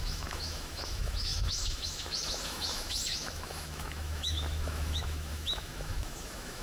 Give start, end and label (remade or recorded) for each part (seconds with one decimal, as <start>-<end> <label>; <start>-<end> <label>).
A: 0.0-6.6 remade